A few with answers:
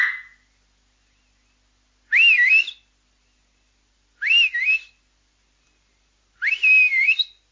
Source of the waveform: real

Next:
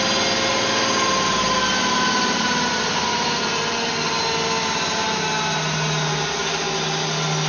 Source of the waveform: real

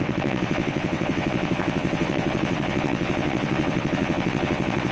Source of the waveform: fake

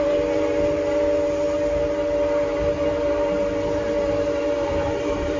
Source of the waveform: real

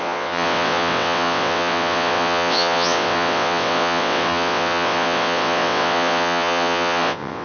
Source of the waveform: fake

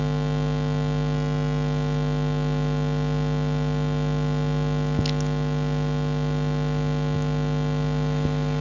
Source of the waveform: real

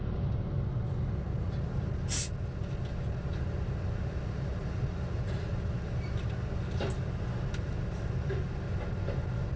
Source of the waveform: real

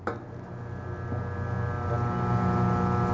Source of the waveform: real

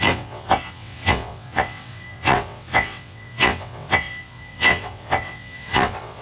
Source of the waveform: fake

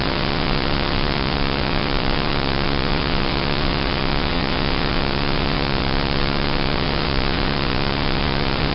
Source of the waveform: fake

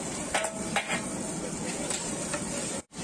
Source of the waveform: real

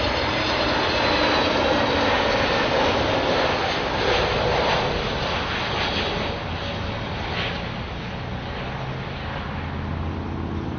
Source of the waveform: real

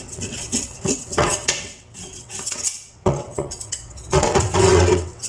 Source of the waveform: fake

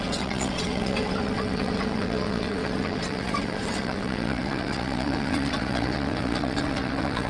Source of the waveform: fake